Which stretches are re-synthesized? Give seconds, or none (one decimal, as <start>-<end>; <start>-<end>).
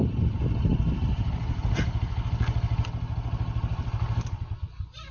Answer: none